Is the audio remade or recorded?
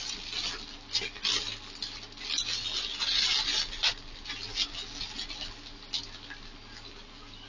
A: recorded